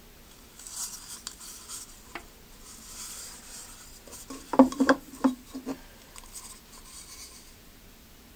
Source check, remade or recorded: recorded